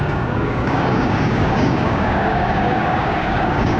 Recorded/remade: remade